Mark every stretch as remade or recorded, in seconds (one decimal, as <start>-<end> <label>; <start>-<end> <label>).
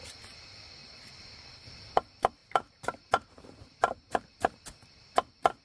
0.0-0.8 recorded; 0.8-1.4 remade; 1.4-2.4 recorded; 2.4-4.6 remade; 4.6-5.6 recorded